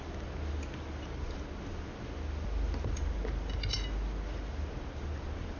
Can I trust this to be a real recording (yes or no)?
yes